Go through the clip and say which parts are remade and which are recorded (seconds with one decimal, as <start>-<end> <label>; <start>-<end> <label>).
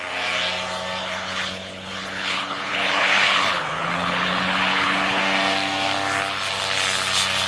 0.0-1.0 recorded; 1.0-5.2 remade; 5.2-7.5 recorded